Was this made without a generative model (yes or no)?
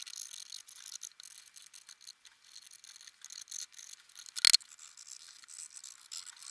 yes